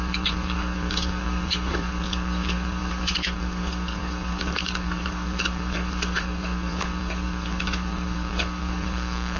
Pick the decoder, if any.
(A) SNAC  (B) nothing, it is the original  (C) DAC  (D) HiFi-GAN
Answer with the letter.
C